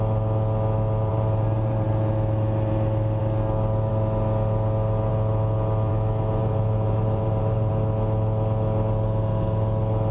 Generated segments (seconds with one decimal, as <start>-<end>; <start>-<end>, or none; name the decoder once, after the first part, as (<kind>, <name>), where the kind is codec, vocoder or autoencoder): 1.1-1.9 (vocoder, BigVGAN v2); 6.4-7.7